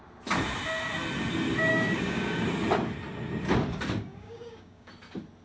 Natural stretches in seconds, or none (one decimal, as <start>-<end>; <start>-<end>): 0.0-1.7; 2.4-4.1; 4.9-5.4

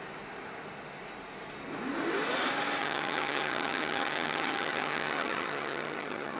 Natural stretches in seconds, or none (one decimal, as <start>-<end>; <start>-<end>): 0.0-2.8

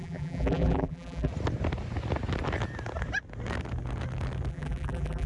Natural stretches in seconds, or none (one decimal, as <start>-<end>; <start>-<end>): 1.3-4.5

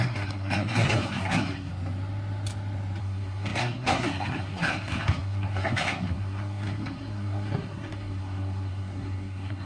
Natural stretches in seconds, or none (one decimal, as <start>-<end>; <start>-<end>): 1.7-3.0

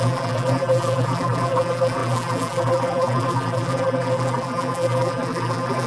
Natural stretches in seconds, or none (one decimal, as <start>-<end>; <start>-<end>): none

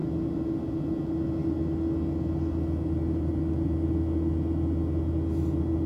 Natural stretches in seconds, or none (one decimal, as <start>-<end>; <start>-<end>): 0.0-5.9

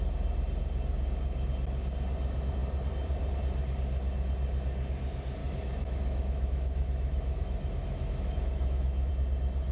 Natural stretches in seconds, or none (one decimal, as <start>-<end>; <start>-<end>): 0.0-5.4; 9.1-9.7

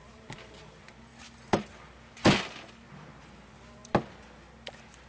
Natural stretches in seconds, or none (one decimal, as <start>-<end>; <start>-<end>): 0.5-5.1